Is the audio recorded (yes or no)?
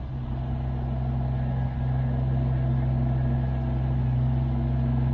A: yes